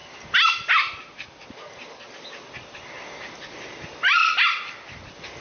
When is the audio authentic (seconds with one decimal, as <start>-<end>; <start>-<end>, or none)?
0.0-5.4